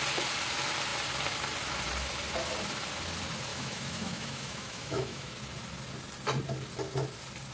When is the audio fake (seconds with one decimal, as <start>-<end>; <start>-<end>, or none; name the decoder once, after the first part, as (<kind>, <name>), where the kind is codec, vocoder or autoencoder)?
3.5-5.3 (autoencoder, DAC-VAE)